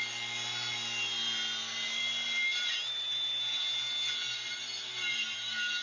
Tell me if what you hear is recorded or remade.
recorded